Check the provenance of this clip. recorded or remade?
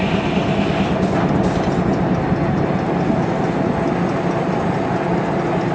recorded